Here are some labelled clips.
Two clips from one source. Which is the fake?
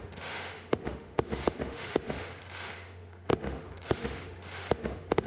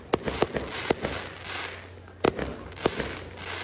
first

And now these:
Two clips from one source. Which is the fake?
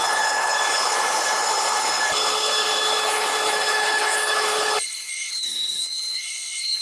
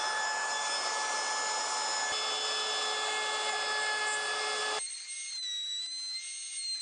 first